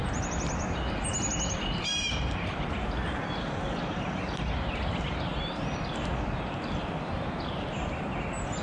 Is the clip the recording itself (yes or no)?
yes